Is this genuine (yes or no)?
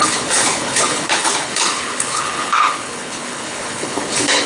no